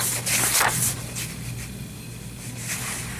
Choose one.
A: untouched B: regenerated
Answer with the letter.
A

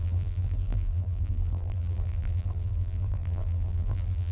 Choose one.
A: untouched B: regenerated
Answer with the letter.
B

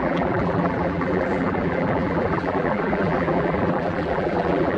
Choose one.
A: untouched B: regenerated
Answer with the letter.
B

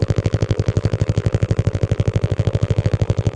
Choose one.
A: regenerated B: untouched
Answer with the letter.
A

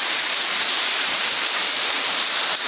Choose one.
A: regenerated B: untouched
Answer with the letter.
A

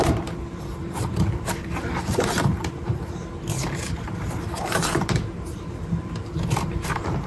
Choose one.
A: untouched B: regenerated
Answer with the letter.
B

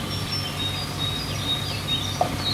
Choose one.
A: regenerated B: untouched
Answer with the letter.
B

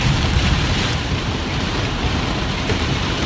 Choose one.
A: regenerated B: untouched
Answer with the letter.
A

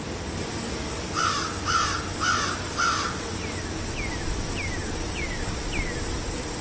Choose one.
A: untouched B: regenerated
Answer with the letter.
A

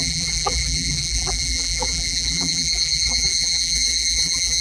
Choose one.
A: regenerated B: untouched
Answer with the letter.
A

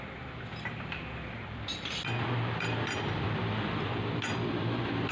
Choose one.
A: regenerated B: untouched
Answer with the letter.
A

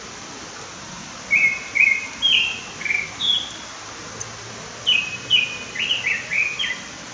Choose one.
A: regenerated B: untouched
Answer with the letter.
B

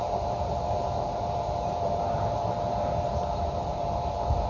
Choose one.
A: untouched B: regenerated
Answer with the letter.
B